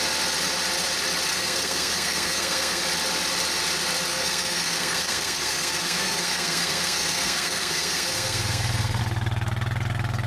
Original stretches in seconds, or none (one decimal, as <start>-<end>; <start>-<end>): 0.0-1.3; 2.8-4.1; 9.0-10.3